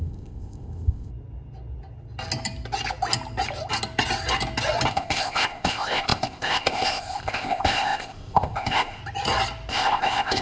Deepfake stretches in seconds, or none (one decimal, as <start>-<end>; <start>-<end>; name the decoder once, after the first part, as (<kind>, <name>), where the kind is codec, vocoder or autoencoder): 0.0-1.1 (codec, ZipCodec); 4.9-9.0; 9.7-10.4